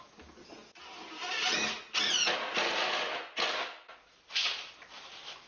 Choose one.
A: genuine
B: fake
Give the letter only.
A